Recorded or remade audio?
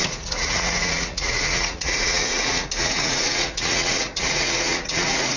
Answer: remade